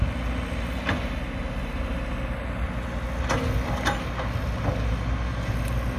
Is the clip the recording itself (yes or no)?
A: yes